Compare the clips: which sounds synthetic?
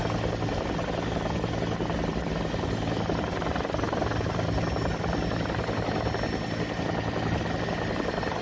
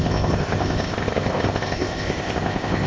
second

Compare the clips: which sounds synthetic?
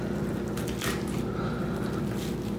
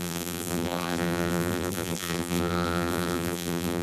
second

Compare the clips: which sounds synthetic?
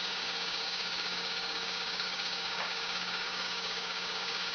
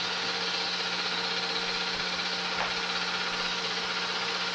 first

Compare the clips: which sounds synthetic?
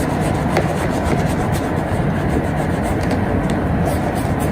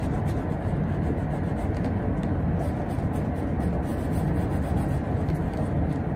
first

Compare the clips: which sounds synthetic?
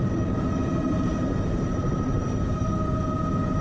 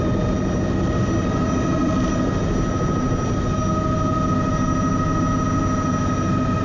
first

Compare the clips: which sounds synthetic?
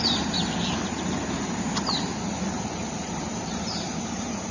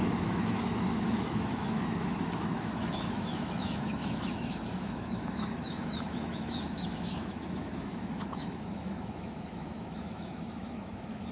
second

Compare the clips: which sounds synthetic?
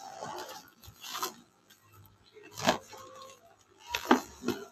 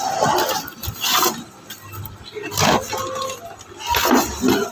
first